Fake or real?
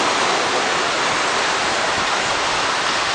real